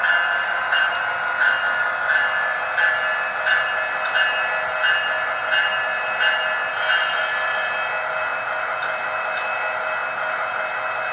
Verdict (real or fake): real